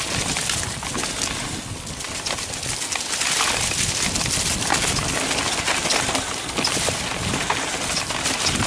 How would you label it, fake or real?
real